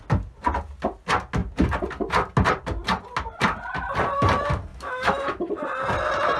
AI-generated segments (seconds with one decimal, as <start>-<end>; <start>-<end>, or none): 4.7-5.5